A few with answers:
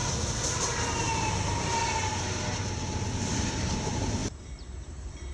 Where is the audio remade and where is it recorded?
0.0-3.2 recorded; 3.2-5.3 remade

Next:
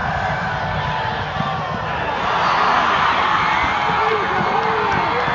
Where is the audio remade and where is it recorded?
0.0-5.3 recorded

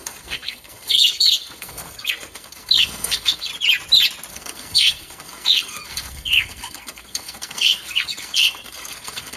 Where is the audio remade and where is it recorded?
0.0-3.5 remade; 3.5-4.3 recorded; 4.3-9.4 remade

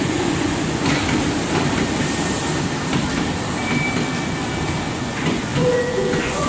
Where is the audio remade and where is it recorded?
0.0-1.0 remade; 1.0-4.9 recorded; 4.9-6.5 remade

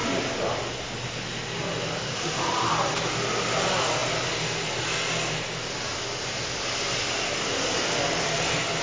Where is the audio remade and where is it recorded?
0.0-8.8 recorded

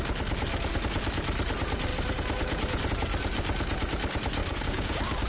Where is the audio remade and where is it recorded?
0.0-4.4 recorded; 4.4-5.3 remade